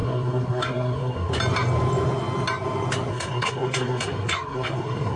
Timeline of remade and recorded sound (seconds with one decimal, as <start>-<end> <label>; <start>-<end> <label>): 0.0-1.3 remade; 1.3-3.1 recorded; 3.1-5.2 remade